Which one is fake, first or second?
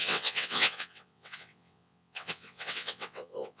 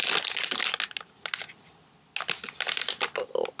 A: first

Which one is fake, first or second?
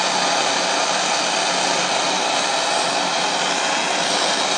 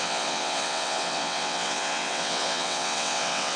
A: second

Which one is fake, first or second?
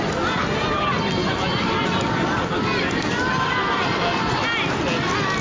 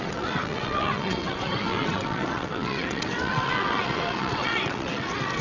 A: second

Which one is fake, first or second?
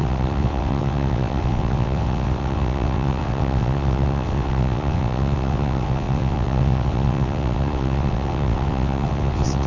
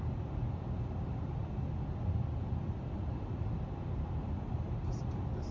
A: first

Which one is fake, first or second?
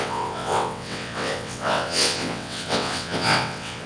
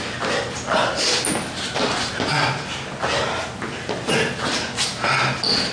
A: first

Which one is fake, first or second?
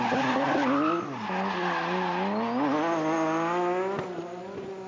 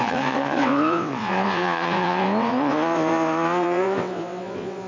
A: second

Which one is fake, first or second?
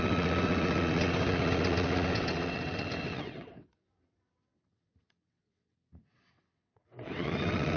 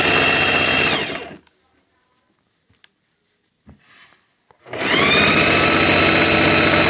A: first